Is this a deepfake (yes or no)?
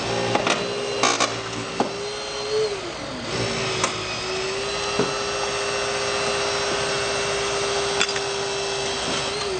no